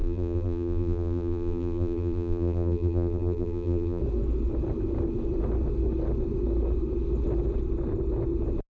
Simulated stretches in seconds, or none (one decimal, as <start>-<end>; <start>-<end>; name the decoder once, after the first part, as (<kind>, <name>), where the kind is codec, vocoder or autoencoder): 0.0-4.0 (vocoder, BigVGAN v2)